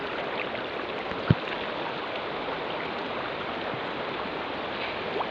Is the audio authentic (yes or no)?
yes